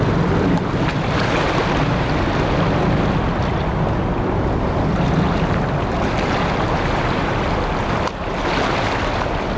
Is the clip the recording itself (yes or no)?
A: yes